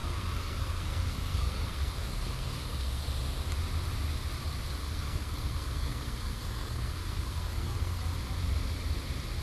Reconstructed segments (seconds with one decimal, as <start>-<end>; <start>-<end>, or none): 0.0-3.0; 4.8-8.0